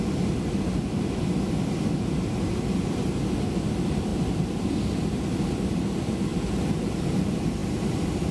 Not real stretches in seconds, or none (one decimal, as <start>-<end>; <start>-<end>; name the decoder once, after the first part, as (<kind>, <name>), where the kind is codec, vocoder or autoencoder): 4.1-4.7 (vocoder, BigVGAN v2); 6.3-7.0

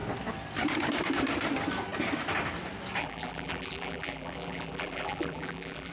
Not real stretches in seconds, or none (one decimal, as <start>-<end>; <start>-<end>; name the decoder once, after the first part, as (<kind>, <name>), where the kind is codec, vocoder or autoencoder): 3.0-5.9 (vocoder, BigVGAN v2)

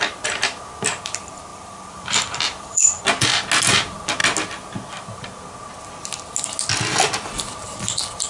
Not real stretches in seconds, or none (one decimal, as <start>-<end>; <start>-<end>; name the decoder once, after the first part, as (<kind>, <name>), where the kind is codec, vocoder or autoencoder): 1.5-3.0 (vocoder, BigVGAN v2)

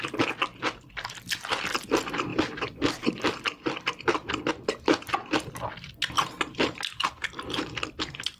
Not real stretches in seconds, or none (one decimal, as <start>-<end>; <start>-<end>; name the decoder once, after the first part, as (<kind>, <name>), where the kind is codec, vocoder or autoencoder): none